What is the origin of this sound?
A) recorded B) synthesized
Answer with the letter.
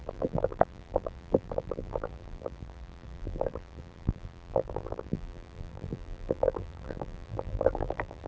B